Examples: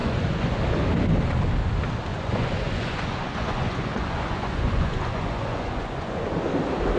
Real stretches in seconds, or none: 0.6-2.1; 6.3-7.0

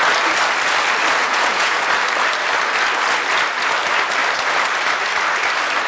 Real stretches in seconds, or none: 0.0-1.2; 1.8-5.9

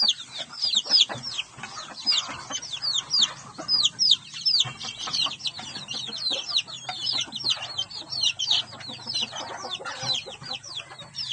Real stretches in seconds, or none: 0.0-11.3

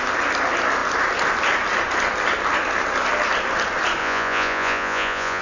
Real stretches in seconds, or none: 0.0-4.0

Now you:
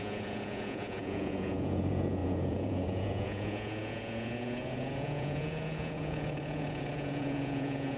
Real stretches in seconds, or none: none

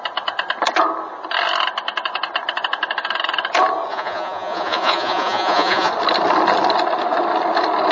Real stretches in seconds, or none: 0.0-3.9; 5.9-7.9

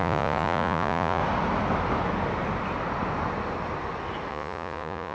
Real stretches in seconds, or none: 1.2-4.3

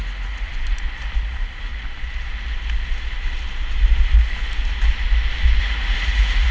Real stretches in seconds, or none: 0.5-1.2; 1.7-5.6